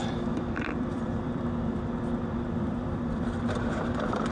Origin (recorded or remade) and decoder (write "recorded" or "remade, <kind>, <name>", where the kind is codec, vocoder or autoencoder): remade, vocoder, BigVGAN v2